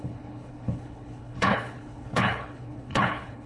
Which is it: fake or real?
fake